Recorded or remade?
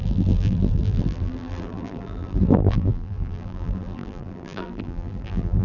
remade